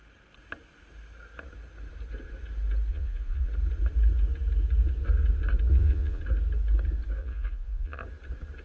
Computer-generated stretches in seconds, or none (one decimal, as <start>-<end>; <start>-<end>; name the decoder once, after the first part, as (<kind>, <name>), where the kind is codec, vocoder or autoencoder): 2.9-3.5 (vocoder, Vocos); 5.7-6.2; 7.2-8.0